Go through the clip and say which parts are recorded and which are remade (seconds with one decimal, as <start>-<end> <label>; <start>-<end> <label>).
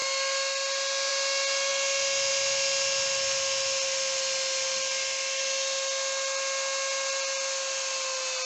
0.0-8.5 recorded